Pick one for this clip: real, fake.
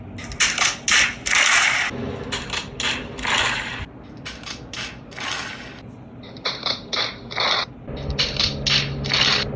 real